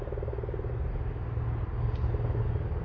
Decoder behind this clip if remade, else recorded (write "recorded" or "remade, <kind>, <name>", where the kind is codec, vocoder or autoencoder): recorded